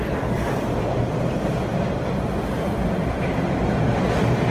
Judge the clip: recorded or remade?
recorded